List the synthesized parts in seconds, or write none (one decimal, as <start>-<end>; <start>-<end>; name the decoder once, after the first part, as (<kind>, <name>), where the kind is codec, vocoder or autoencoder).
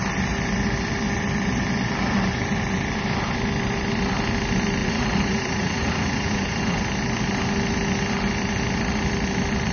4.8-6.8 (vocoder, Vocos)